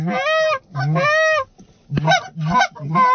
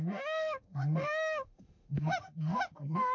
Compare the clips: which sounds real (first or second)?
first